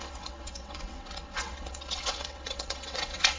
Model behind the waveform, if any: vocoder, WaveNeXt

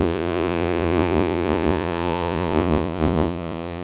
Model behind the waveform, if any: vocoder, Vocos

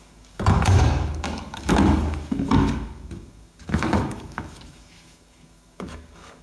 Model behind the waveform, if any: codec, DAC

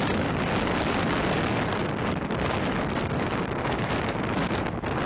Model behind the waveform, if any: none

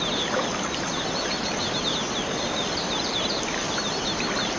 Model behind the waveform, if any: none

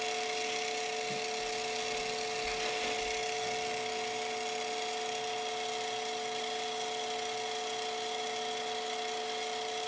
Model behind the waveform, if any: none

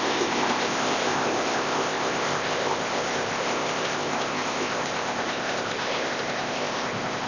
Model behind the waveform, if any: codec, ZipCodec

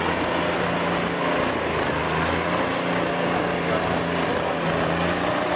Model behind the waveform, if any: none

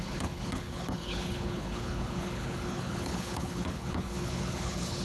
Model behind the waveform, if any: codec, HILCodec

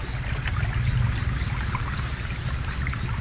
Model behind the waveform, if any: none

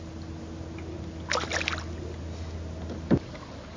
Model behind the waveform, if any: none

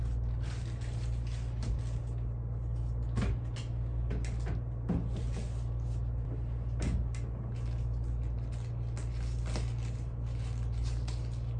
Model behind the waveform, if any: none